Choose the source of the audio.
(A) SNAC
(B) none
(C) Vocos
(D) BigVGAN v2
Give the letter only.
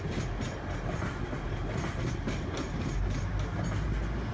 B